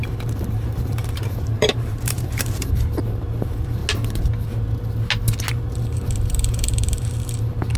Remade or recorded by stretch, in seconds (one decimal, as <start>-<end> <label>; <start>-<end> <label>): 0.0-3.8 remade; 3.8-5.5 recorded; 5.5-7.8 remade